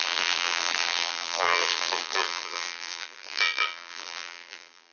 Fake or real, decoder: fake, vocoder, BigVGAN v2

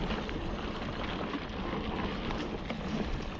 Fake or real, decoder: real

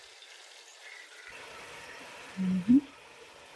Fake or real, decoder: real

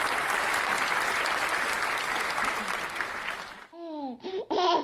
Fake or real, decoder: real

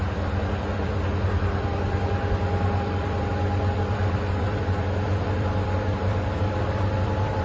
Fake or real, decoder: fake, vocoder, BigVGAN v2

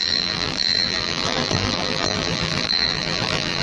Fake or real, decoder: fake, vocoder, BigVGAN v2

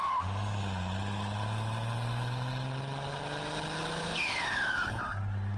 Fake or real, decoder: real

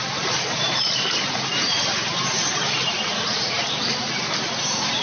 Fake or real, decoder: fake, vocoder, BigVGAN v2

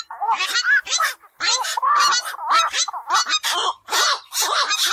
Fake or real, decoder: real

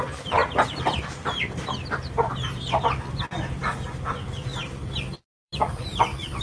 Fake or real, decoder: fake, vocoder, BigVGAN v2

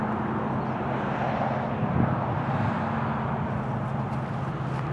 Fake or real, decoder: real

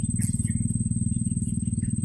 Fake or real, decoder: real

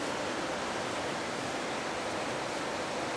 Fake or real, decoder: real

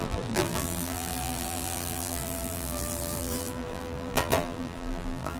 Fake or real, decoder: fake, vocoder, BigVGAN v2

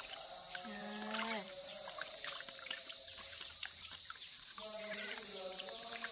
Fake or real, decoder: fake, vocoder, BigVGAN v2